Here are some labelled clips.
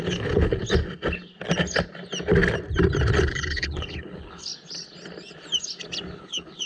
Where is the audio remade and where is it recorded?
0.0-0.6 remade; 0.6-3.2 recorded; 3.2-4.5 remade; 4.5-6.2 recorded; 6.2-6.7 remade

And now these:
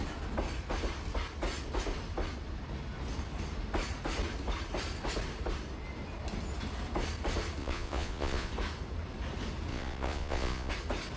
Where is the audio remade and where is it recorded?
0.0-7.6 recorded; 7.6-8.5 remade; 8.5-9.7 recorded; 9.7-10.7 remade; 10.7-11.2 recorded

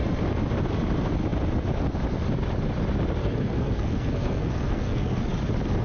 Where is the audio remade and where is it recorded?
0.0-3.2 recorded; 3.2-5.3 remade; 5.3-5.8 recorded

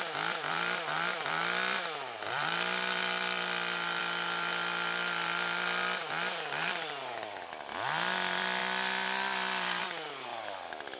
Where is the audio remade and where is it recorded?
0.0-10.3 remade; 10.3-11.0 recorded

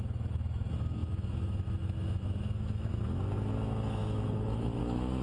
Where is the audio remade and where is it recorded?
0.0-5.2 remade

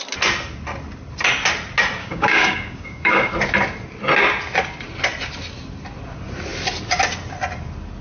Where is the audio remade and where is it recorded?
0.0-2.0 recorded; 2.0-3.3 remade; 3.3-8.0 recorded